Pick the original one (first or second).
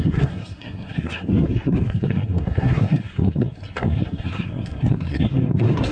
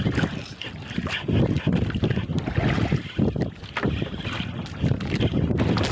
second